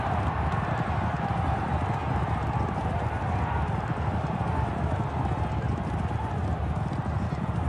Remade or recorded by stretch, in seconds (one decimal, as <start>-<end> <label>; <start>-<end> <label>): 0.0-7.7 recorded